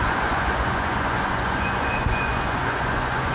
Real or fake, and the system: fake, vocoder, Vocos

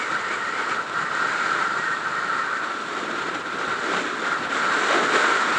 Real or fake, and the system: real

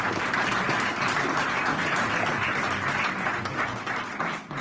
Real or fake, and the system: real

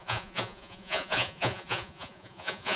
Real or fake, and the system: fake, vocoder, Vocos